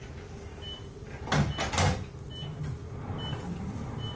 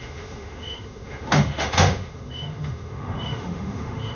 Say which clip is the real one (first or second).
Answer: first